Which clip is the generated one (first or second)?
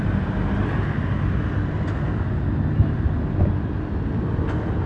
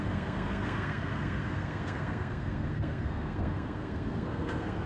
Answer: second